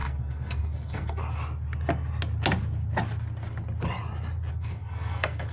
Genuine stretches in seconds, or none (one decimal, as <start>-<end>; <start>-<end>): 1.2-4.5